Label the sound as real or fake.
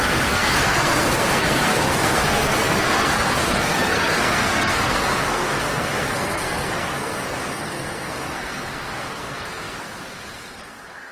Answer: fake